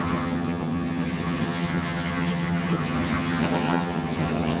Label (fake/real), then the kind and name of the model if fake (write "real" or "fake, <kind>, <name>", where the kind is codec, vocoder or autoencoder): fake, vocoder, HiFi-GAN